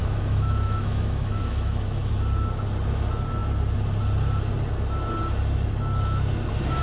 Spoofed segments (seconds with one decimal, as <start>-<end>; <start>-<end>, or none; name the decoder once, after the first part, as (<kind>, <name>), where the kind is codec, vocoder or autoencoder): 0.0-2.1 (autoencoder, DAC-VAE)